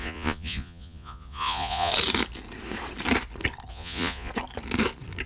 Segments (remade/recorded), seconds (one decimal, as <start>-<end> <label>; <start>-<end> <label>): 0.0-1.9 remade; 1.9-3.7 recorded; 3.7-4.3 remade; 4.3-5.3 recorded